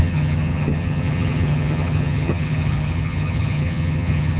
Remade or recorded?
remade